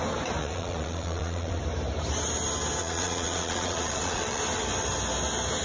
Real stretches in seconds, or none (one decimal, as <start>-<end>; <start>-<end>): 0.0-0.4; 1.6-2.8; 4.4-5.6